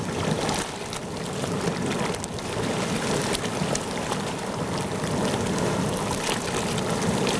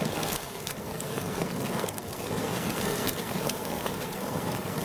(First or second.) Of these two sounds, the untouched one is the first